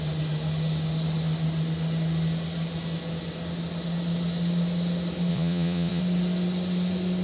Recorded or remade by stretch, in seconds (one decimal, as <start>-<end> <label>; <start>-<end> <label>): 0.0-5.3 recorded; 5.3-6.0 remade; 6.0-7.2 recorded